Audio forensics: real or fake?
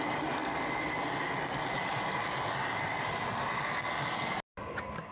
real